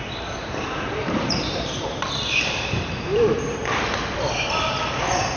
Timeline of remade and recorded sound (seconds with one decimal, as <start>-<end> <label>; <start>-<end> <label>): 0.0-0.4 recorded; 0.4-3.6 remade; 3.6-5.4 recorded